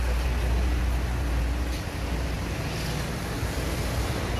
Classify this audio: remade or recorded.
recorded